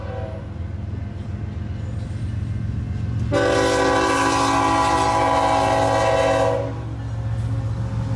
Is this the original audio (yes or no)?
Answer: yes